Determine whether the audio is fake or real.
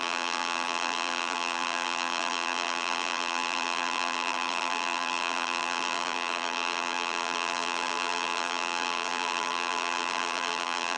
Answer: fake